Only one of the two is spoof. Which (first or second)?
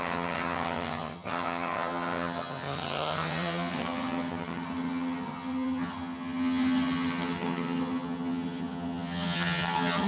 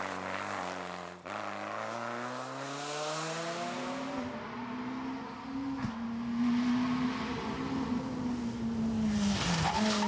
first